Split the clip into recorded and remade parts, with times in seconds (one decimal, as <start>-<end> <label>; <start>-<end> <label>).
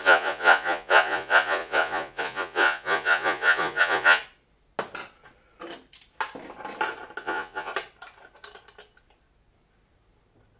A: 0.0-4.2 remade; 4.2-7.2 recorded; 7.2-7.7 remade; 7.7-10.6 recorded